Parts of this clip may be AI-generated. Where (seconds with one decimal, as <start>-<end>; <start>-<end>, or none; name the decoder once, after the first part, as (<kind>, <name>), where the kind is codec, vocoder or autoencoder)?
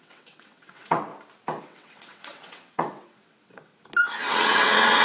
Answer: 0.0-1.1 (vocoder, WaveNeXt); 1.6-3.7; 4.3-5.0